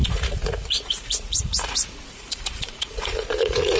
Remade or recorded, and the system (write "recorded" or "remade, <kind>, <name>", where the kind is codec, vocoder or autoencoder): remade, vocoder, Vocos